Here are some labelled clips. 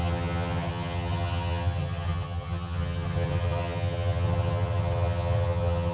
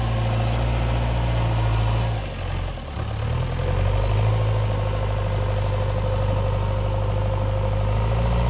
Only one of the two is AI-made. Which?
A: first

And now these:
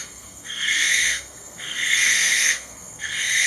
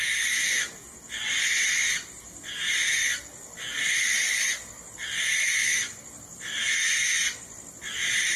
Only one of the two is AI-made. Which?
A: first